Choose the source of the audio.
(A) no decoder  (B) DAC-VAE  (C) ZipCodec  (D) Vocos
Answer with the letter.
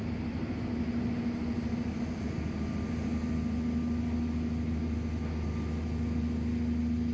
A